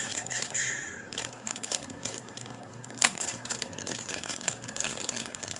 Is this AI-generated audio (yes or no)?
yes